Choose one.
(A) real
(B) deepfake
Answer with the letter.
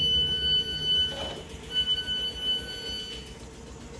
A